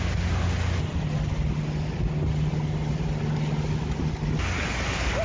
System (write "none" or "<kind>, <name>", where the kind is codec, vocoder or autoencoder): none